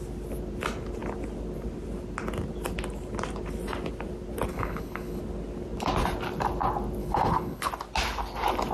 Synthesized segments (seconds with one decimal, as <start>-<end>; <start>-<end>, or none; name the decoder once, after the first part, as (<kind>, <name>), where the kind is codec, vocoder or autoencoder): 4.5-5.2 (codec, HILCodec); 7.0-7.7